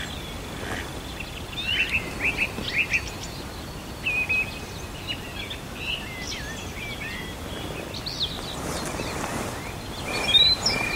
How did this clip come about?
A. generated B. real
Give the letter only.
B